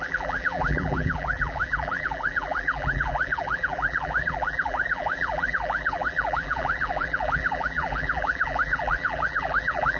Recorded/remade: remade